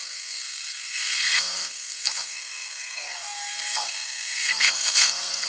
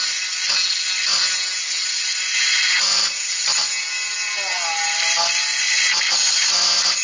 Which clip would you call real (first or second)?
second